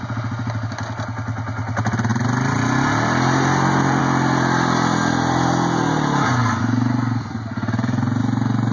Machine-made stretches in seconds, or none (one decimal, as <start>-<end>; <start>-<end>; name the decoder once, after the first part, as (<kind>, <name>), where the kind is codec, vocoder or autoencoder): none